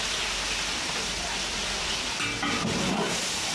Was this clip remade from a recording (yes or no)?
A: no